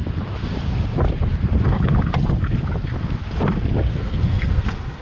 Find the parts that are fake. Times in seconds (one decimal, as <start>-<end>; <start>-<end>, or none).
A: 3.9-5.0